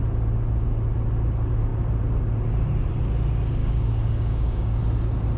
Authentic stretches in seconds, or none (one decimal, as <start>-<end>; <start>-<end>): 0.0-3.6; 4.8-5.4